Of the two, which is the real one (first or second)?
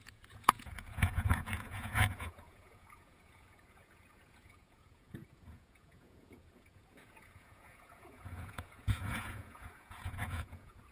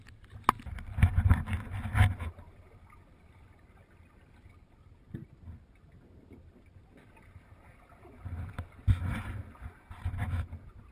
second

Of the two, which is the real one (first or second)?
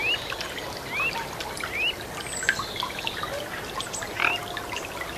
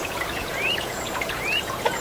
first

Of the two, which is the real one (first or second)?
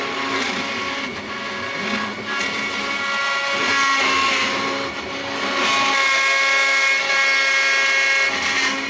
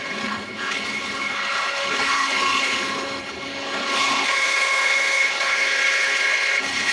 first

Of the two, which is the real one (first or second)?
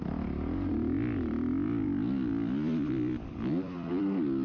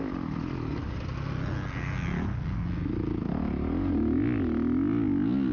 second